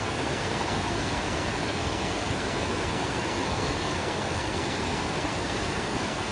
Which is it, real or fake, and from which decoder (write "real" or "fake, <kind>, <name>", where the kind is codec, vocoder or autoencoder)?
fake, codec, SNAC